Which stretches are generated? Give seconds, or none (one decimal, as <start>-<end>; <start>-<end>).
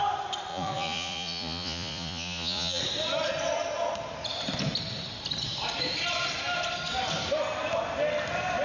0.5-2.8